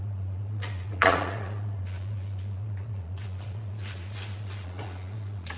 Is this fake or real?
fake